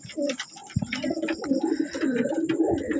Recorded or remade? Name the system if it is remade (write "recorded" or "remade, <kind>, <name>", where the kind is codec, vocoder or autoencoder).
recorded